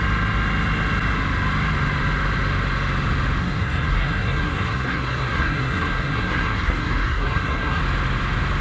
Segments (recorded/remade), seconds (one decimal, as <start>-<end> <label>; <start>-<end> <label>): 0.0-3.4 recorded; 3.4-7.8 remade; 7.8-8.6 recorded